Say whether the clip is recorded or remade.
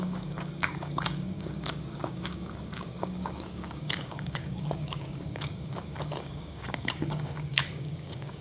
remade